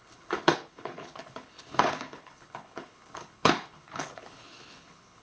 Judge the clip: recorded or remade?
remade